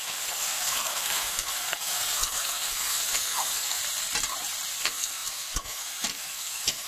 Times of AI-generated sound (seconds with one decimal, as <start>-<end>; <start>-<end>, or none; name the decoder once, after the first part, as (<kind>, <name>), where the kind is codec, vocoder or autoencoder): 0.0-3.8 (codec, SNAC); 4.8-6.9